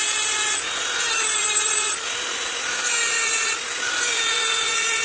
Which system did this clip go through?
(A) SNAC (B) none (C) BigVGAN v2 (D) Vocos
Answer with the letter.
B